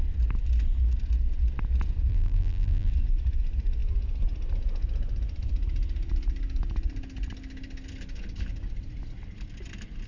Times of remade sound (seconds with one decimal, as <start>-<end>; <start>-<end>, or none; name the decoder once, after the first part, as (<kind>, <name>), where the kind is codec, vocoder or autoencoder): 2.1-2.9 (vocoder, BigVGAN v2)